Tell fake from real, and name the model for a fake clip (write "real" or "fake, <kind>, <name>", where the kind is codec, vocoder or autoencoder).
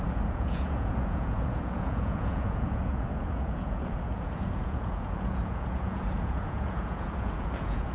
fake, vocoder, Vocos